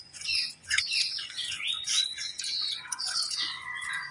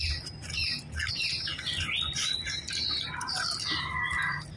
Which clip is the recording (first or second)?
second